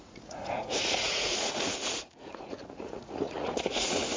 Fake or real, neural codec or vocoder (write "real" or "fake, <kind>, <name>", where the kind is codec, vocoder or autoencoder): fake, vocoder, Vocos